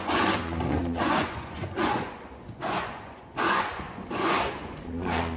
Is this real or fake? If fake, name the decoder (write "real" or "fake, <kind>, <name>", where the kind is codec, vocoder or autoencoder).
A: fake, vocoder, Vocos